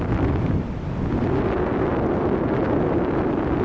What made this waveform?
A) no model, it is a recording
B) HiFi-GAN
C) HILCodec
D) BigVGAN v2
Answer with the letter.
A